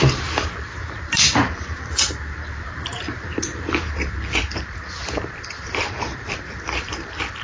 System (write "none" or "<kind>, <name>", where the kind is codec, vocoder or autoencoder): vocoder, BigVGAN v2